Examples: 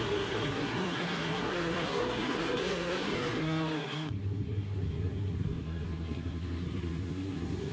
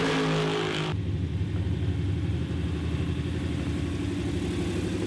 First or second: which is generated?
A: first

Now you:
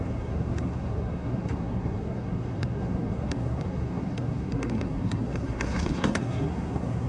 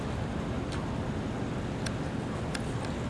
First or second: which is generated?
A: first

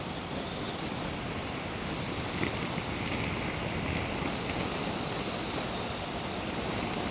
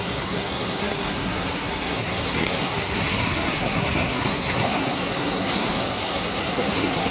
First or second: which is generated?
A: second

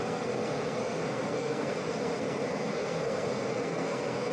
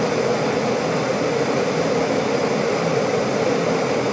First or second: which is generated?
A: first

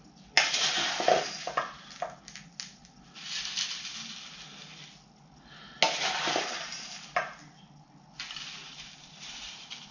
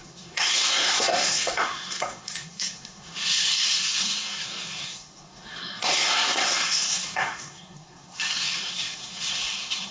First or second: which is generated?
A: second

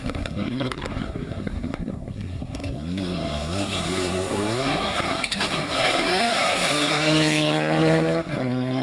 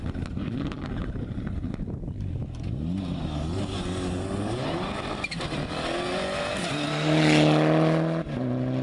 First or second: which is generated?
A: first